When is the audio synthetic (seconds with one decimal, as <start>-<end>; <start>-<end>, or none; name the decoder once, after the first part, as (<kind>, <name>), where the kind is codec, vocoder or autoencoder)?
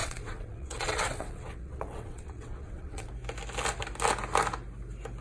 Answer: 0.0-3.1 (vocoder, WaveNeXt)